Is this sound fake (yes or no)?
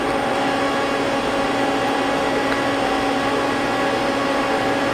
no